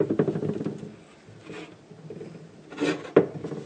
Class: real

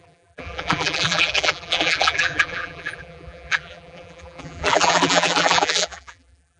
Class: fake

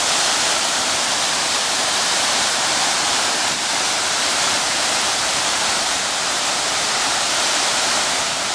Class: fake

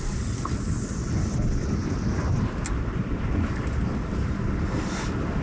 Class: real